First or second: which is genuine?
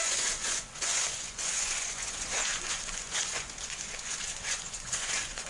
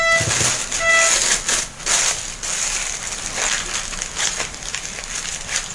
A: second